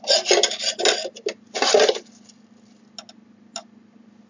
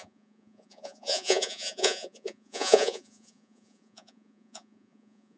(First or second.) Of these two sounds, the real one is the first